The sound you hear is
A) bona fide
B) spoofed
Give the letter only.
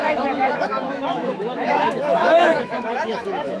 B